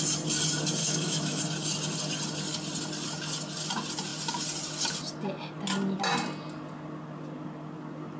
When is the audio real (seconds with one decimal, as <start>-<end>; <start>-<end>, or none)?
0.0-0.8; 1.4-8.2